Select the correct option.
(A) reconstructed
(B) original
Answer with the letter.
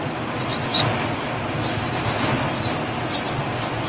B